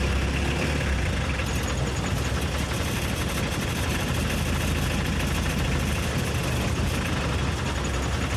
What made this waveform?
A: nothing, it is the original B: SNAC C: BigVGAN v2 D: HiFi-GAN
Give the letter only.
A